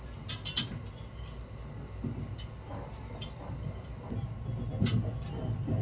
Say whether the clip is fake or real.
real